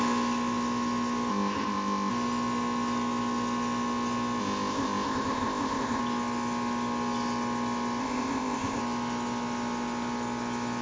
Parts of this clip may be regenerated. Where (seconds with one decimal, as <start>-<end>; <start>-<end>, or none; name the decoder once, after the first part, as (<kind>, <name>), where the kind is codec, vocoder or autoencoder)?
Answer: 1.3-2.1 (codec, ZipCodec); 4.4-6.0; 8.0-8.8